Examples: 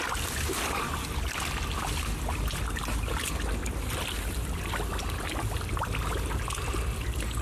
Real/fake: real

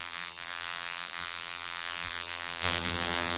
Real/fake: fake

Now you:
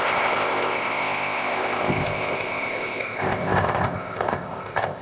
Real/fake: fake